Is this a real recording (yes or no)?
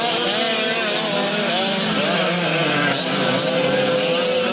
yes